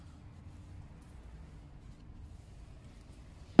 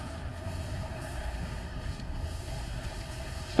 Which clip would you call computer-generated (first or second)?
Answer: second